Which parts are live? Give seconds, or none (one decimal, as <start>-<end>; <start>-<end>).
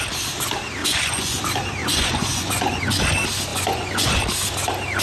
0.0-0.8; 1.4-1.8; 2.8-3.5; 4.2-5.0